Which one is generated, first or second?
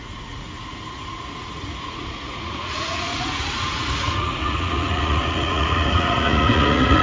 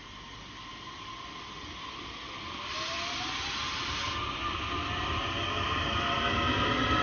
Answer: first